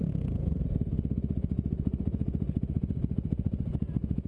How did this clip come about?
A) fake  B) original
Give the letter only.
A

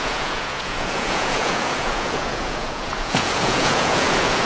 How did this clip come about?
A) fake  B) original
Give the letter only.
A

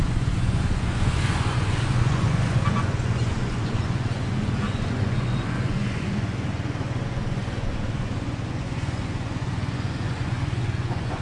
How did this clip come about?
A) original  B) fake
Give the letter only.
B